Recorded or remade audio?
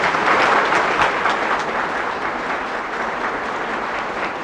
recorded